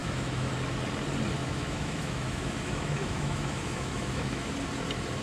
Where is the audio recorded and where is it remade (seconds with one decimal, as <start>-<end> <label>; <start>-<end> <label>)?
0.0-0.5 remade; 0.5-1.4 recorded; 1.4-4.5 remade; 4.5-5.2 recorded

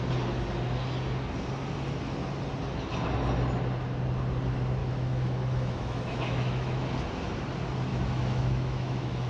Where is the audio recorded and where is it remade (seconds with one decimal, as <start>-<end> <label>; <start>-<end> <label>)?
0.0-4.8 recorded; 4.8-6.9 remade; 6.9-7.9 recorded; 7.9-9.3 remade

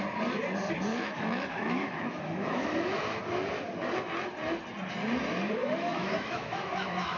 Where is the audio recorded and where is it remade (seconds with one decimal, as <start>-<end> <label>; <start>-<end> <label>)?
0.0-0.9 recorded; 0.9-3.0 remade; 3.0-5.6 recorded; 5.6-7.2 remade

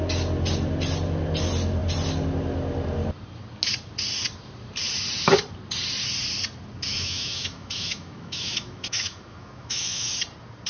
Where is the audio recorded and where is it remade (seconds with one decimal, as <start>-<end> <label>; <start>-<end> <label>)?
0.0-6.9 recorded; 6.9-10.1 remade; 10.1-10.7 recorded